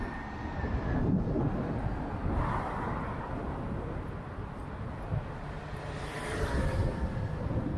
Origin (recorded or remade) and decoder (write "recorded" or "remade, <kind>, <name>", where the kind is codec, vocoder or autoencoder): recorded